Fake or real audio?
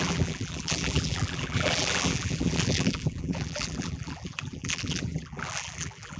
fake